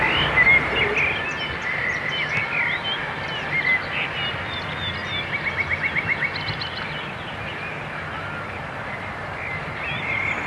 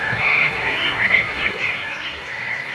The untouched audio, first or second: first